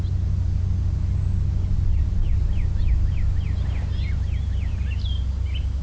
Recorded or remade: recorded